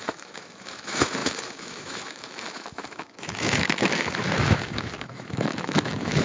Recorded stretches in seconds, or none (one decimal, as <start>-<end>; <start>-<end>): none